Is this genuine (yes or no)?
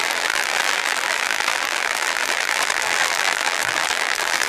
no